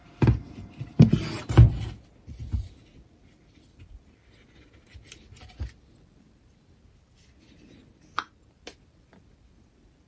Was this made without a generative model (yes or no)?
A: yes